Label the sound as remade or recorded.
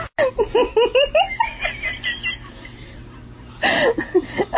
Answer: recorded